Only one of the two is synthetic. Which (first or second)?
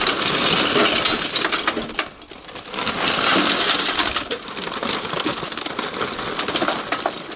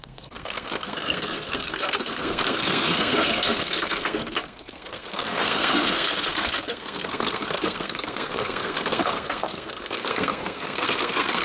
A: second